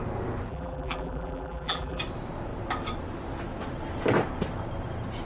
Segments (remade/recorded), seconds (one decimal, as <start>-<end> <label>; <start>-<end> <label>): 0.0-0.5 recorded; 0.5-2.0 remade; 2.0-5.3 recorded